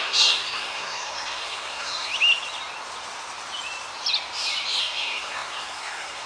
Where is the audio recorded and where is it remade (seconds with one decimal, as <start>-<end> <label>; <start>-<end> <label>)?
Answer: 0.0-2.1 remade; 2.1-4.8 recorded; 4.8-6.3 remade